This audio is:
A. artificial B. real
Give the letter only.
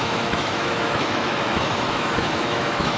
A